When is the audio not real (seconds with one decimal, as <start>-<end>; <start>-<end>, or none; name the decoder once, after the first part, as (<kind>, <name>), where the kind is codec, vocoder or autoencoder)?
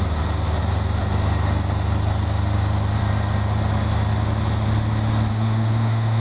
5.3-6.2 (autoencoder, DAC-VAE)